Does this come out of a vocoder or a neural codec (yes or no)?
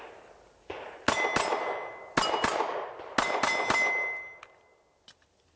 no